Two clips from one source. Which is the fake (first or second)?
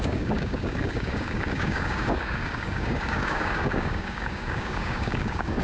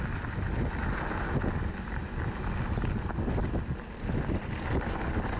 first